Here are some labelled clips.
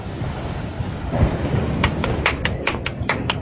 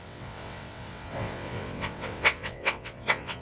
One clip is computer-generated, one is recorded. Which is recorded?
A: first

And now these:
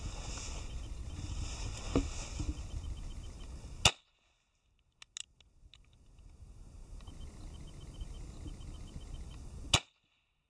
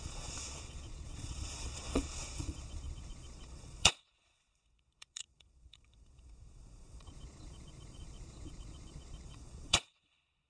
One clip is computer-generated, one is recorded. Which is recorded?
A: first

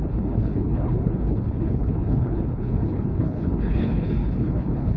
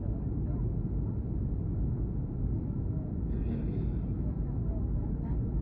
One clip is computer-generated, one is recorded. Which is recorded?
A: second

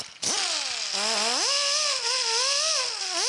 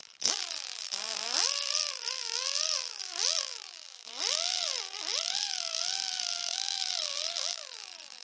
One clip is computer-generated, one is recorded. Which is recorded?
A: first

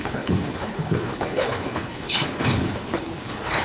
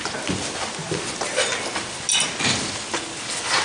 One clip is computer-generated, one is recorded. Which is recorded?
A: second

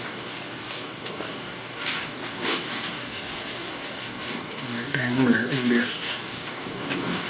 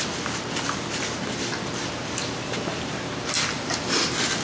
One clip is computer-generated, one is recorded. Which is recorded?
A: second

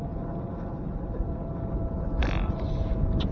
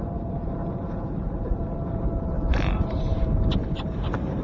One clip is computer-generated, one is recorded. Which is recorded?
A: first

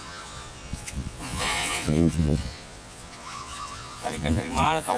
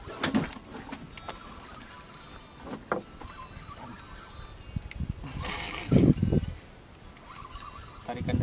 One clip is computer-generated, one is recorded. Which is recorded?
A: second